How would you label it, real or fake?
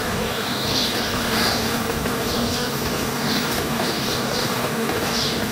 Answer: fake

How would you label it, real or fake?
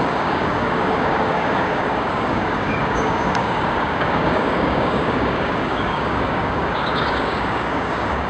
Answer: fake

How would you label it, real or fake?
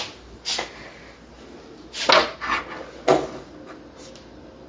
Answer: real